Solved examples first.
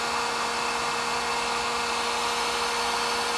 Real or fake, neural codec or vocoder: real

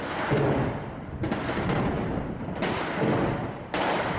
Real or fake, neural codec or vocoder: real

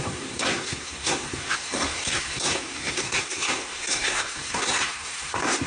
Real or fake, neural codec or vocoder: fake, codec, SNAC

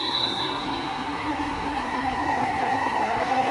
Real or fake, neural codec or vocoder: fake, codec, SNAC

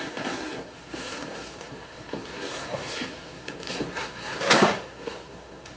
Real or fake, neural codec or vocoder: fake, codec, SNAC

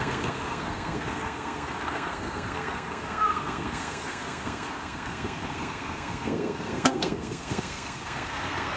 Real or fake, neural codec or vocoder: fake, codec, SNAC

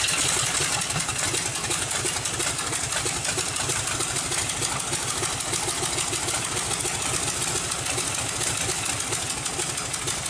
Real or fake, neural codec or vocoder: real